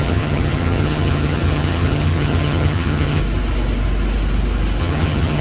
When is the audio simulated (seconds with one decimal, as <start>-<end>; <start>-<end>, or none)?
0.0-3.2; 4.8-5.4